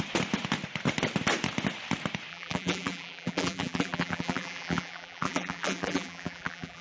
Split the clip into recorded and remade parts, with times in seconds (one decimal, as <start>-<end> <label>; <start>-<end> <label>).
0.0-2.3 recorded; 2.3-6.8 remade